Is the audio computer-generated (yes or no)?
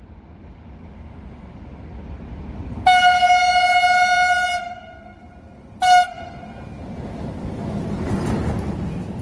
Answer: no